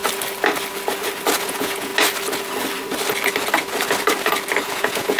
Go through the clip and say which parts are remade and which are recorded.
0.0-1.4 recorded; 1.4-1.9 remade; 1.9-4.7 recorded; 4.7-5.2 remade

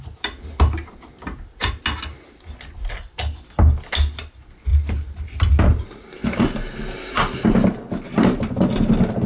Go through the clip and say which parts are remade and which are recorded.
0.0-9.3 recorded

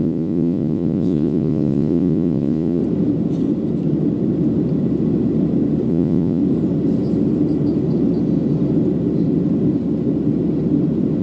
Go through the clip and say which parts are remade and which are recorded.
0.0-2.8 remade; 2.8-5.9 recorded; 5.9-6.4 remade; 6.4-11.2 recorded

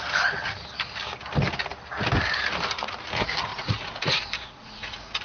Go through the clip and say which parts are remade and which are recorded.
0.0-3.5 recorded; 3.5-5.2 remade

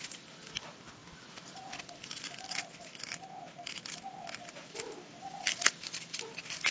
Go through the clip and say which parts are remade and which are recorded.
0.0-6.7 recorded